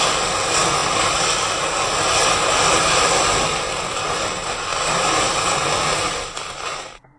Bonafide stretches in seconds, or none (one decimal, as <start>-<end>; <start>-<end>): 0.0-7.2